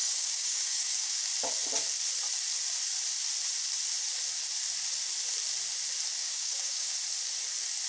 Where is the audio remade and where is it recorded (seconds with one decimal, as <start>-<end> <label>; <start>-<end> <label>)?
0.0-1.1 remade; 1.1-6.2 recorded; 6.2-6.9 remade; 6.9-7.9 recorded